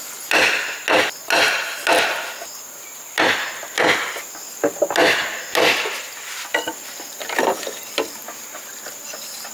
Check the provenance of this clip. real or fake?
real